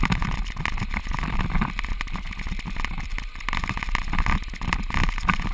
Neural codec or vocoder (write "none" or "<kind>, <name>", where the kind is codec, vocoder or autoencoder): none